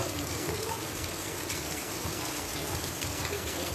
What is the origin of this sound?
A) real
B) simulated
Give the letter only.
B